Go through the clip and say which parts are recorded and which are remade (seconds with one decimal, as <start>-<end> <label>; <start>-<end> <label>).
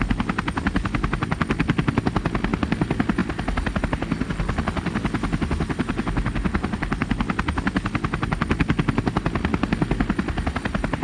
0.0-11.0 recorded